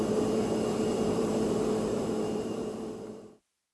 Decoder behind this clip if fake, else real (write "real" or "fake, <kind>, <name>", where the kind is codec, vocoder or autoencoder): fake, vocoder, BigVGAN v2